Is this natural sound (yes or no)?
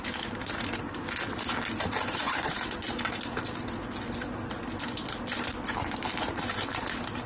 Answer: yes